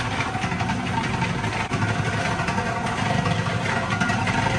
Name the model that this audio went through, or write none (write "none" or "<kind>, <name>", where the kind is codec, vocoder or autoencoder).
none